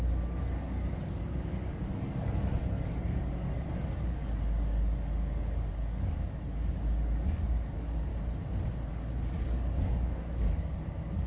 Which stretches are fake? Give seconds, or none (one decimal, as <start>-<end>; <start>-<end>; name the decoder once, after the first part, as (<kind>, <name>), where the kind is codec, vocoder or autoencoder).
0.0-8.1 (codec, DAC); 8.9-11.3

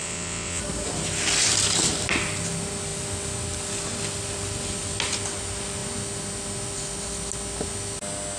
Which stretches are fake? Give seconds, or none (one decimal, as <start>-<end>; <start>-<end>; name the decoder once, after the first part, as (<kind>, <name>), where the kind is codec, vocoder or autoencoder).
0.0-0.6 (vocoder, WaveNeXt)

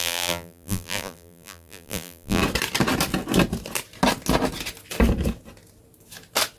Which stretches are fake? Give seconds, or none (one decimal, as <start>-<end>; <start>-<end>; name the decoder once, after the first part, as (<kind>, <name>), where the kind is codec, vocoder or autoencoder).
0.0-2.4 (vocoder, BigVGAN v2)

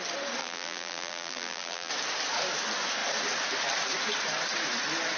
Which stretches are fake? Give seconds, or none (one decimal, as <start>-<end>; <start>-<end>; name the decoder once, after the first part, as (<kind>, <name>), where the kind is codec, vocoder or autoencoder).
0.4-1.9 (vocoder, BigVGAN v2)

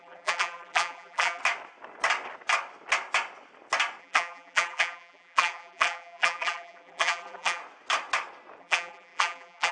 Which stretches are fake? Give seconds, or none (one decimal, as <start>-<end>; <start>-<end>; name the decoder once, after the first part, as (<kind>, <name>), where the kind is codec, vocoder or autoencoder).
0.0-1.4 (vocoder, BigVGAN v2); 4.0-7.6; 8.6-9.7

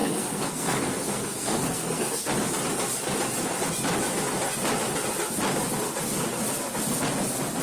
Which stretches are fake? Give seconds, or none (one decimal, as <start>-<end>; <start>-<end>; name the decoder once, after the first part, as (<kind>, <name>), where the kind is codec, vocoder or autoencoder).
0.0-2.3 (codec, SNAC)

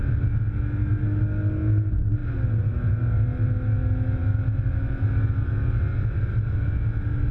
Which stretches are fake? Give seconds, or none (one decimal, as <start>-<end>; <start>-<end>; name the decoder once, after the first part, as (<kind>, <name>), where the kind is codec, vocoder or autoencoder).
none